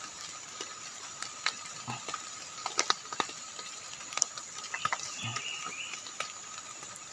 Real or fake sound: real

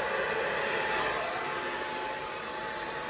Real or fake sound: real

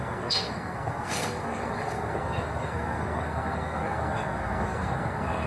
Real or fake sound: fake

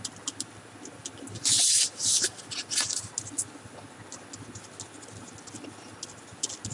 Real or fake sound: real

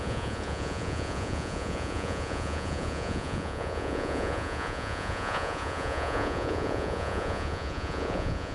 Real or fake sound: fake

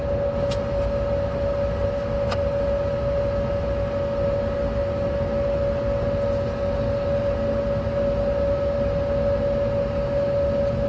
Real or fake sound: real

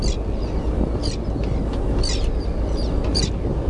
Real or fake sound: real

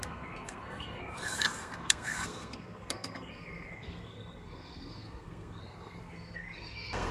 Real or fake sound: fake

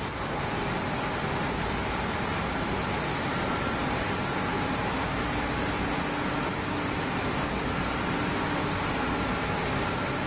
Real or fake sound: real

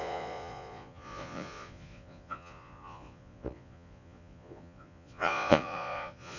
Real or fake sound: fake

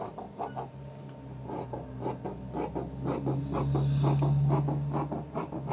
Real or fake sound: real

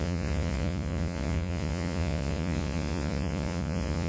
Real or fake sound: fake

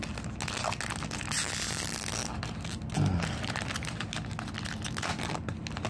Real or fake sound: real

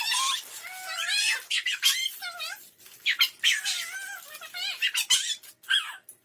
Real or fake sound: real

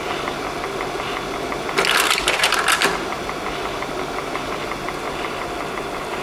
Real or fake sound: real